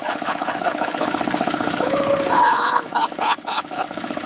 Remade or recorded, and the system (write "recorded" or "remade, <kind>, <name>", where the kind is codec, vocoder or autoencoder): remade, codec, HILCodec